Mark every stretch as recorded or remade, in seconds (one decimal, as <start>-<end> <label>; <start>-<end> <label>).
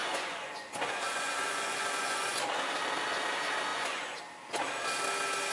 0.0-2.4 remade; 2.4-3.7 recorded; 3.7-4.2 remade; 4.2-5.5 recorded